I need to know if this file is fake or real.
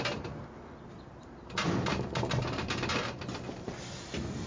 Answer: real